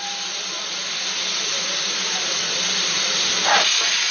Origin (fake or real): real